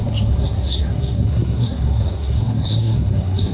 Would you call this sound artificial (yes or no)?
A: yes